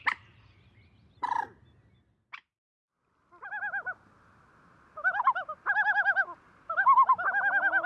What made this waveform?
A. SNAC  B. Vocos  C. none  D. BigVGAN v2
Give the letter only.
C